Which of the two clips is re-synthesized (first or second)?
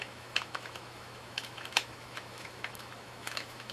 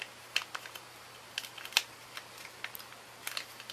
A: first